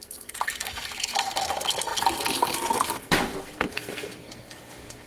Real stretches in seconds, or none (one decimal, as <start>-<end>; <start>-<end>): none